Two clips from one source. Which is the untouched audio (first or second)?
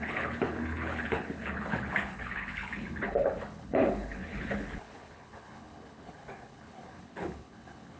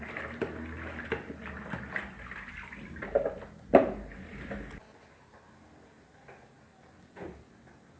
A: second